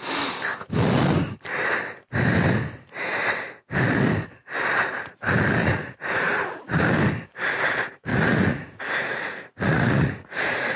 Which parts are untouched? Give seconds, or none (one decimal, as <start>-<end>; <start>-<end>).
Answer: 0.0-5.6; 6.8-8.1